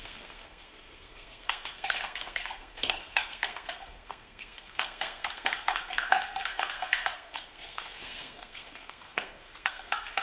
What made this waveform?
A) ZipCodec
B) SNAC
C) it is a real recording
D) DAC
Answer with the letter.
B